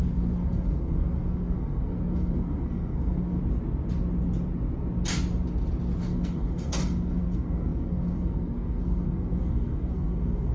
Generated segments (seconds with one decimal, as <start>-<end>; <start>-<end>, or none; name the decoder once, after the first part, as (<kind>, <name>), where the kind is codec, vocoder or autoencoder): 0.0-3.4 (codec, SNAC); 6.0-10.5